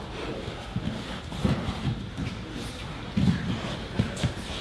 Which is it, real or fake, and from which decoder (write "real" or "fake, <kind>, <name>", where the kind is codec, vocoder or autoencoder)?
real